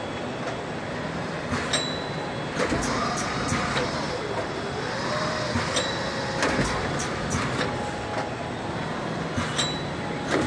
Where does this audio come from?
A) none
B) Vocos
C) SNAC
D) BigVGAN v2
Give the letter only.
A